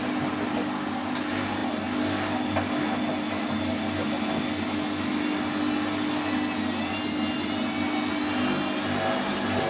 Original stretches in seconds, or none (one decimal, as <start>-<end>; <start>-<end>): 0.0-9.7